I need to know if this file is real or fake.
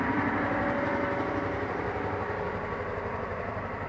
fake